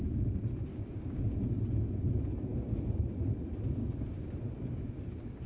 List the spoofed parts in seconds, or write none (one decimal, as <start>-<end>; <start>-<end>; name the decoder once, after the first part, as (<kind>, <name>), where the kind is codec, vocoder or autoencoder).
0.7-1.2 (codec, DAC); 3.8-4.9